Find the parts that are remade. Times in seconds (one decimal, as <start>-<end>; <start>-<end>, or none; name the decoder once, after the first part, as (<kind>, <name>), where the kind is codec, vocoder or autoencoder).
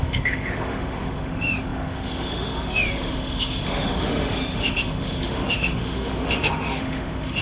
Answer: 0.0-7.4 (autoencoder, DAC-VAE)